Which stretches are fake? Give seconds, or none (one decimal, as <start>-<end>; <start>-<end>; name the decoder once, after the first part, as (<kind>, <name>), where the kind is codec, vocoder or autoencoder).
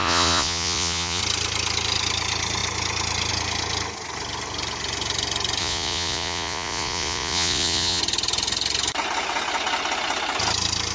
0.0-1.2 (vocoder, Vocos); 5.6-8.0